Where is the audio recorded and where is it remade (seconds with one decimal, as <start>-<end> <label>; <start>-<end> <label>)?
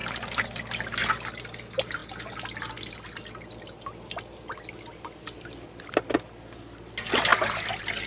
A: 0.0-8.1 recorded